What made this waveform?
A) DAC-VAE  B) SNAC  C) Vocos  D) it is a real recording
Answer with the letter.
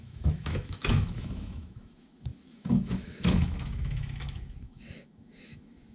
A